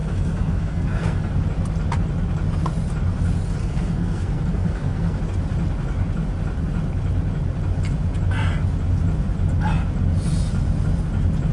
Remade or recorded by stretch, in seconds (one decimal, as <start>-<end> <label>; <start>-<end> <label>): 0.0-1.3 remade; 1.3-3.6 recorded; 3.6-5.2 remade; 5.2-11.5 recorded